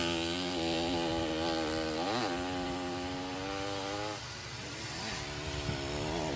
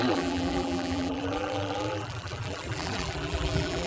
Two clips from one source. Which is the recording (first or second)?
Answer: first